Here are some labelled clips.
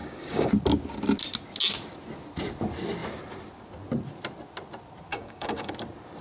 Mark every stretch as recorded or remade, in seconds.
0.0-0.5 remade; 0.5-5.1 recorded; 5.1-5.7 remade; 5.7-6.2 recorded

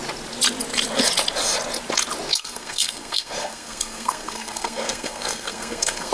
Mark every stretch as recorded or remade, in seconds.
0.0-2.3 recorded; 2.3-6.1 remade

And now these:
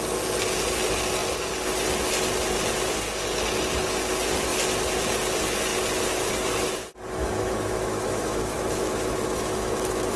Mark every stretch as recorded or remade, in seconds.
0.0-7.2 recorded; 7.2-10.2 remade

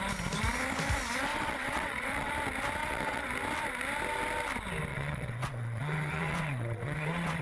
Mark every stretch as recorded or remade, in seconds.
0.0-1.3 recorded; 1.3-2.3 remade; 2.3-2.8 recorded; 2.8-3.3 remade; 3.3-4.9 recorded; 4.9-7.4 remade